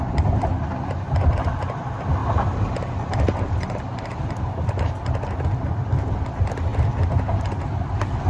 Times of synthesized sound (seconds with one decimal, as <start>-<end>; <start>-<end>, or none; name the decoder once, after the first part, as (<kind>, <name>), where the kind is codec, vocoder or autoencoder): 0.0-6.7 (vocoder, BigVGAN v2); 7.4-8.3

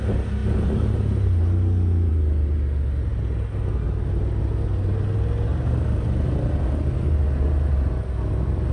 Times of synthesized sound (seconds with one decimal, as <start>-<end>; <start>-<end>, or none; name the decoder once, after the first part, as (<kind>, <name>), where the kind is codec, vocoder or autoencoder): 5.5-6.8 (vocoder, BigVGAN v2)